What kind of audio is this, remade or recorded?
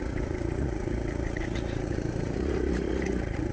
remade